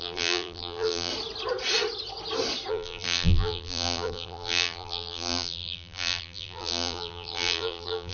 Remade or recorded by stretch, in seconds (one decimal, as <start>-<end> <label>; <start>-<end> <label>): 0.0-1.1 remade; 1.1-2.7 recorded; 2.7-8.1 remade